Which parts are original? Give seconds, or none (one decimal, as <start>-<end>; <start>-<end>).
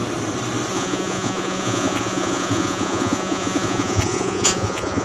0.0-0.7